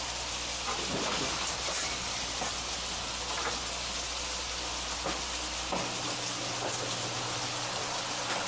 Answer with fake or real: real